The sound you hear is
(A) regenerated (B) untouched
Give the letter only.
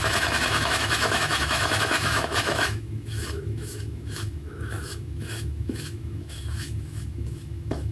A